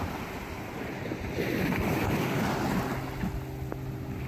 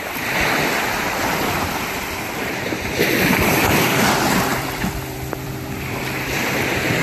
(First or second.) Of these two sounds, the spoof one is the second